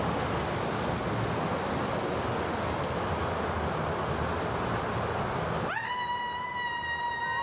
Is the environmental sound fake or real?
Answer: real